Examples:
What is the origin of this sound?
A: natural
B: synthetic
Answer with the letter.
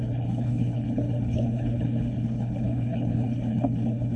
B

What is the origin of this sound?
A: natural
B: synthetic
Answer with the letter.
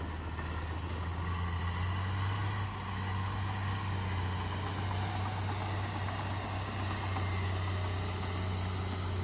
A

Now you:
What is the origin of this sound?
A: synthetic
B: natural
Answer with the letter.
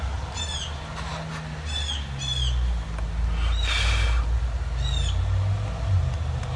B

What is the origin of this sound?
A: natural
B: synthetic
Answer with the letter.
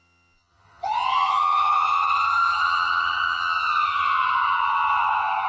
B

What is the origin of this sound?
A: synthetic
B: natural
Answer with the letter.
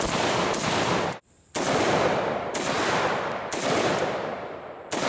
B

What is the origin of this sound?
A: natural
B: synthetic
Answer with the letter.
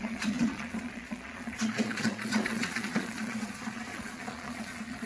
B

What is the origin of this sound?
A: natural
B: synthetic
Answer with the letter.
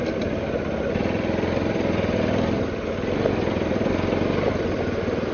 A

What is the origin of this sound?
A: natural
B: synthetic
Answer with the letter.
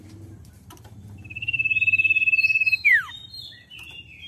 B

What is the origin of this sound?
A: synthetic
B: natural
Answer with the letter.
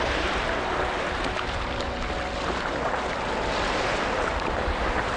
B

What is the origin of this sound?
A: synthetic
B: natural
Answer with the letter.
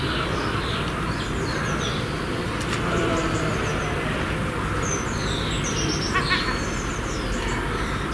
B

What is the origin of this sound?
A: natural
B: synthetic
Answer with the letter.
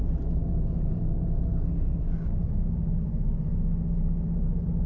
A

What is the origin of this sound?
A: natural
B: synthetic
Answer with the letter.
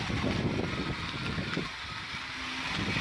A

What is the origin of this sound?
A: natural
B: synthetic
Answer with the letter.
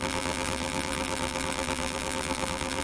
B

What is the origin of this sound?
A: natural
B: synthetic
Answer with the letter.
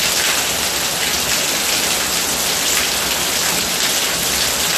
A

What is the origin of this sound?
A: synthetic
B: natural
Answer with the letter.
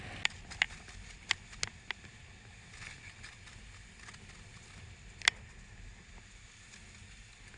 B